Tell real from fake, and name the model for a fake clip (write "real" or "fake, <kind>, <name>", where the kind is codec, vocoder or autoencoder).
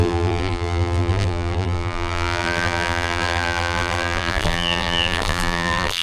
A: fake, vocoder, BigVGAN v2